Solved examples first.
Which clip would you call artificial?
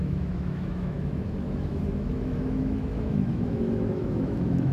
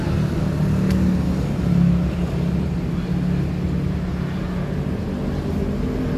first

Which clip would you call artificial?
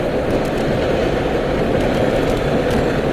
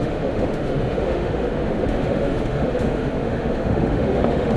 second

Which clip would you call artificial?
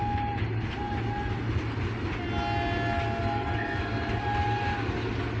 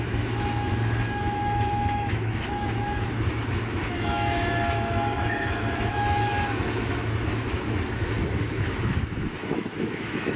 second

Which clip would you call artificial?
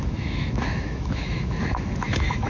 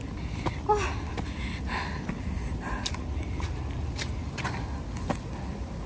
first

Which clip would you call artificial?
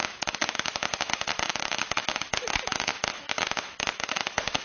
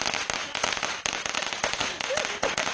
first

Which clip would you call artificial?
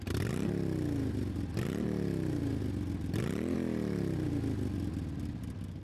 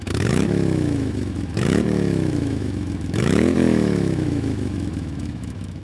second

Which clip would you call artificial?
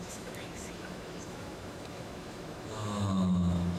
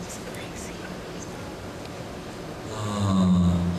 first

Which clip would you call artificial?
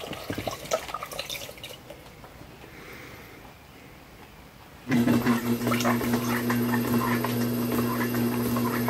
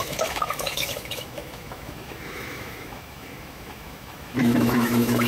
second